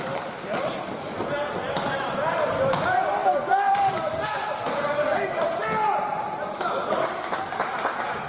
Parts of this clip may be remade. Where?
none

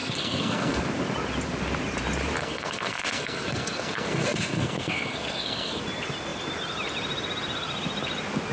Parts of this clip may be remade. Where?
0.0-0.8 (codec, SNAC); 2.4-5.8

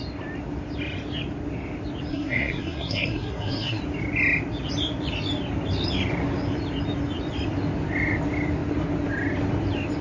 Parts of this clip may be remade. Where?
2.1-3.8 (codec, SNAC)